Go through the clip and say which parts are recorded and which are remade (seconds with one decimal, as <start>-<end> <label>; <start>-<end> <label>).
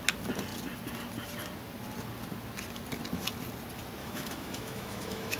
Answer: 0.0-4.0 recorded; 4.0-5.4 remade